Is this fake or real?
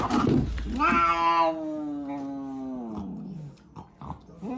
real